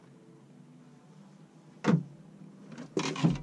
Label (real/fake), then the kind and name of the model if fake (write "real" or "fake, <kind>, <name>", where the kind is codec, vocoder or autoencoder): real